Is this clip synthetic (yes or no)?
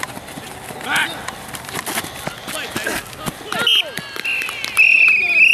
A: no